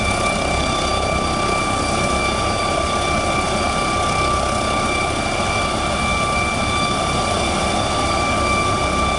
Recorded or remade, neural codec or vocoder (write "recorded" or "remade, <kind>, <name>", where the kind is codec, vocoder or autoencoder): recorded